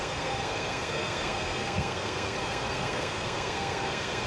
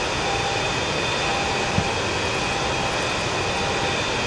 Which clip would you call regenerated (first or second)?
first